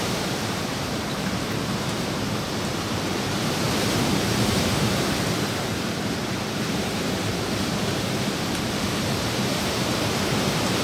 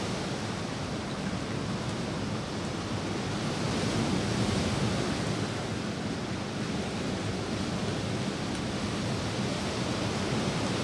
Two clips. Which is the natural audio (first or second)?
second